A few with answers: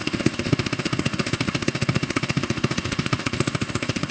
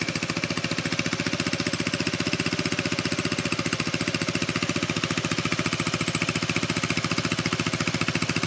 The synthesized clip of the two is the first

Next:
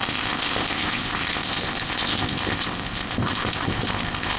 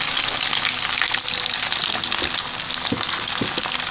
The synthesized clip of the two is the first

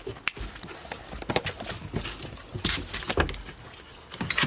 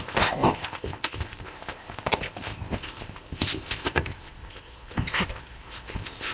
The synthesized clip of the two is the second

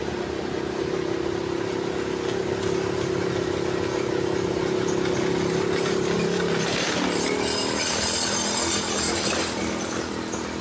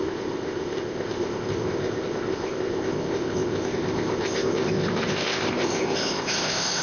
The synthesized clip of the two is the second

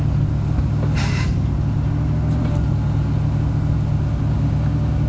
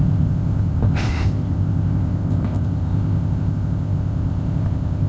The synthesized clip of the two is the second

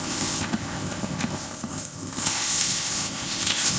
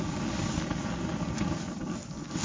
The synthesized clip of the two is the first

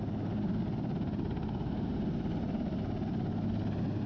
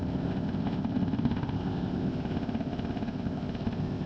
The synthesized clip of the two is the second